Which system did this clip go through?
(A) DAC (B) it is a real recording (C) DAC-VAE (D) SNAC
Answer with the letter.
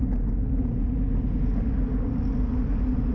B